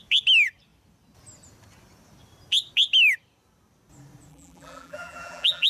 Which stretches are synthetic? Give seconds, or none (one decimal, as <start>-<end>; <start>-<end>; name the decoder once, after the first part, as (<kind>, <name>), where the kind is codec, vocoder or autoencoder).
4.3-5.7 (vocoder, BigVGAN v2)